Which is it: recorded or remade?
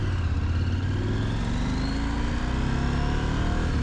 recorded